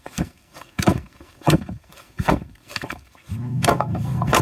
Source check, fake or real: fake